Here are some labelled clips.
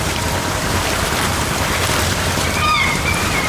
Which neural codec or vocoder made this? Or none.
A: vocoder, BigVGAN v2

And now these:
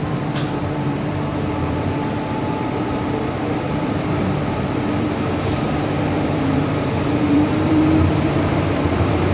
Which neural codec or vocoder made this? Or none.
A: vocoder, BigVGAN v2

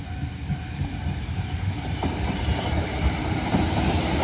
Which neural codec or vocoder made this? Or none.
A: vocoder, BigVGAN v2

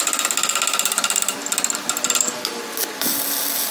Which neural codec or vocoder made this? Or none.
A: none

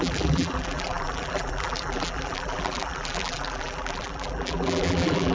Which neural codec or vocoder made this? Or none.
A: vocoder, BigVGAN v2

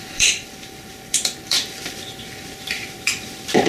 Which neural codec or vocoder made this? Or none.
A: vocoder, BigVGAN v2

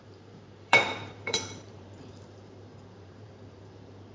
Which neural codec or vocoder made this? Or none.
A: vocoder, BigVGAN v2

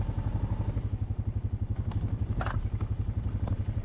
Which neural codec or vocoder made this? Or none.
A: none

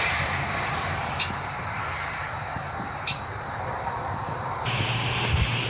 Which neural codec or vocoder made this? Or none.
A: vocoder, BigVGAN v2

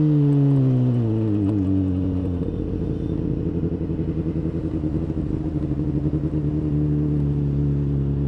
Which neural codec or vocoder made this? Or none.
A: none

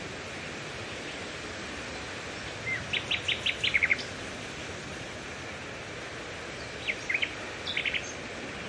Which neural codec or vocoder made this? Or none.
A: none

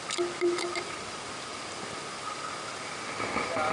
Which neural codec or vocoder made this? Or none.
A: vocoder, BigVGAN v2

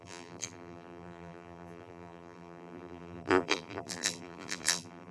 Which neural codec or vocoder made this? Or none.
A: vocoder, BigVGAN v2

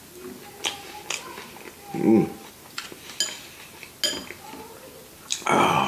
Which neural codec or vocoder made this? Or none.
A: none